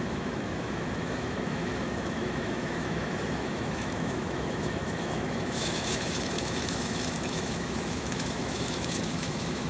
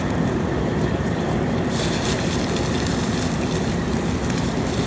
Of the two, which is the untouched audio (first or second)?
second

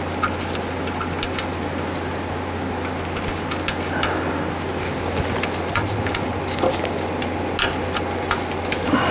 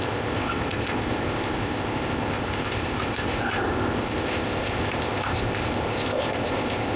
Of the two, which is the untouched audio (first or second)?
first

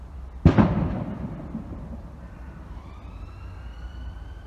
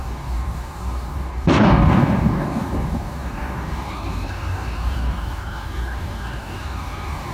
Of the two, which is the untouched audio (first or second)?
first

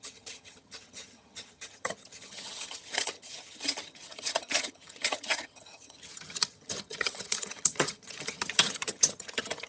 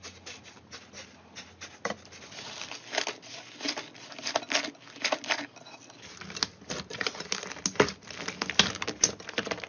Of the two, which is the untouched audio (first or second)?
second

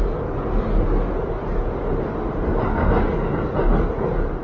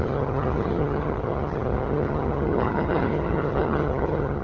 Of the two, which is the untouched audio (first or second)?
first